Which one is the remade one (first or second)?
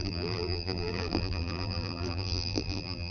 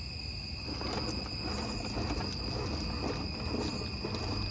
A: first